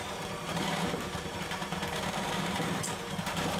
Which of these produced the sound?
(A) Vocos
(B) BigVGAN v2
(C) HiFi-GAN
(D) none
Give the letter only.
B